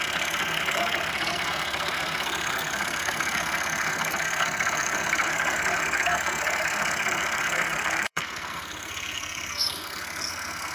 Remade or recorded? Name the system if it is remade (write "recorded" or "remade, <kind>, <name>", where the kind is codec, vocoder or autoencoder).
remade, codec, SNAC